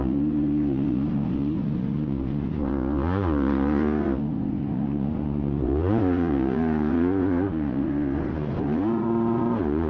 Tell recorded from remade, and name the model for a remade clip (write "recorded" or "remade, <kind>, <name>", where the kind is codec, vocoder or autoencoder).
remade, vocoder, Vocos